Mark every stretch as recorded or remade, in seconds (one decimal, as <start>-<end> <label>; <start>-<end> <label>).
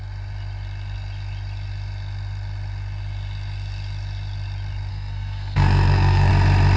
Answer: 0.0-4.9 recorded; 4.9-6.3 remade; 6.3-6.8 recorded